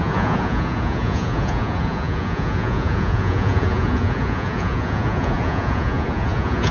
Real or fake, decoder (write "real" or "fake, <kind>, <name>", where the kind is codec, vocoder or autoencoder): fake, vocoder, Vocos